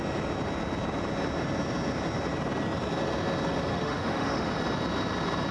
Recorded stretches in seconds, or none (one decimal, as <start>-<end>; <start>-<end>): 0.0-3.7; 4.5-5.5